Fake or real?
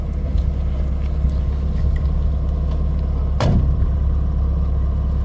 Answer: real